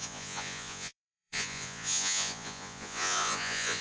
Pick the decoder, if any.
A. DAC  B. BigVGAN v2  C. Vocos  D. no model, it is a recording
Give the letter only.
C